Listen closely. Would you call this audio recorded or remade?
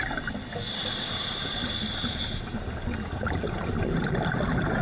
recorded